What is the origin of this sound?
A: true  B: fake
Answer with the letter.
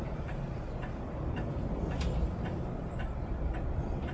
B